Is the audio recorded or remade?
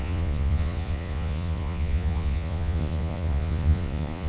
remade